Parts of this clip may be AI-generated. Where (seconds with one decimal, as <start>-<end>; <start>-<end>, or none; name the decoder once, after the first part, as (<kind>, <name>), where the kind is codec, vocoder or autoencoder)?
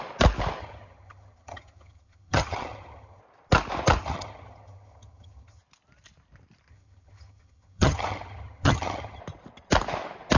0.6-3.2 (vocoder, HiFi-GAN); 4.0-5.6; 6.7-9.2